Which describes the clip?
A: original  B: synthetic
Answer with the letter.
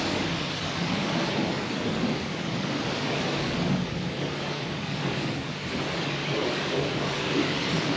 B